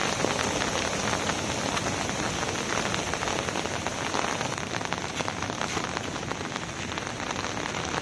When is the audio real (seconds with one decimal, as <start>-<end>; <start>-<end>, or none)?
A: 0.0-8.0